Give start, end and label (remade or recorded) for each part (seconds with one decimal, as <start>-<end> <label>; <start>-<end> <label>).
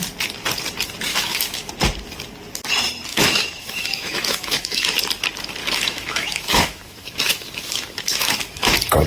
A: 0.0-1.1 recorded; 1.1-1.7 remade; 1.7-3.1 recorded; 3.1-5.0 remade; 5.0-5.6 recorded; 5.6-8.7 remade; 8.7-9.1 recorded